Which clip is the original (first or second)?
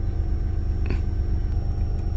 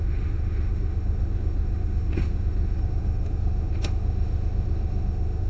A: first